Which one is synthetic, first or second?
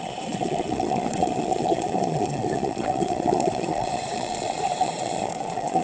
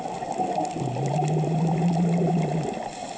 first